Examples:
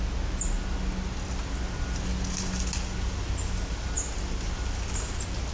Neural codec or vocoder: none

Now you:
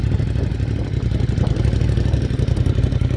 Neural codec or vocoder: none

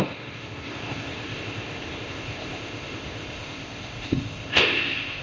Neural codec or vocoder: codec, ZipCodec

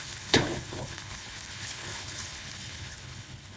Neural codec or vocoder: codec, HILCodec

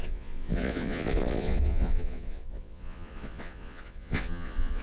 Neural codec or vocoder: vocoder, Vocos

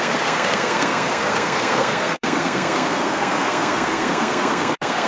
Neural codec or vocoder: codec, SNAC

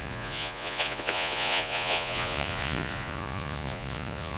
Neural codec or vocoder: vocoder, Vocos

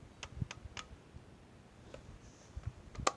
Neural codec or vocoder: none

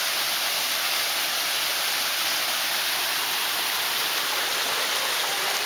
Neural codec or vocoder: none